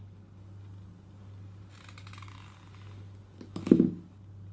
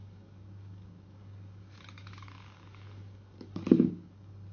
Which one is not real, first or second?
second